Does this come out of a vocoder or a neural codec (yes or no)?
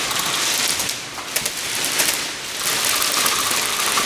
yes